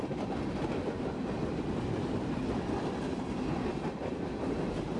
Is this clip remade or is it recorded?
recorded